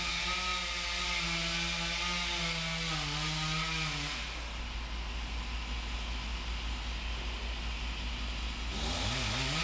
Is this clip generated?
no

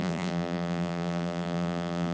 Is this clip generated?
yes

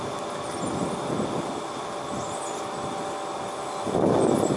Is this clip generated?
no